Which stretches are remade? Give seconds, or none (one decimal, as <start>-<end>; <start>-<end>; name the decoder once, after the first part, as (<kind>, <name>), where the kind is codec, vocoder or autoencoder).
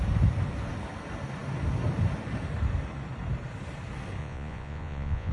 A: 4.2-5.3 (vocoder, Vocos)